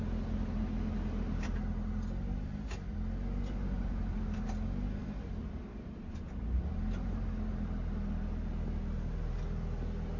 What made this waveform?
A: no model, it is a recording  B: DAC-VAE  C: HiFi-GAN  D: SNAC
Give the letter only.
A